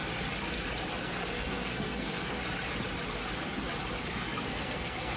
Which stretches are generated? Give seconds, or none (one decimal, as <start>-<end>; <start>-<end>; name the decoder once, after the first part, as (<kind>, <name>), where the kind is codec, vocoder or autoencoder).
1.0-2.4 (codec, SNAC); 4.0-5.2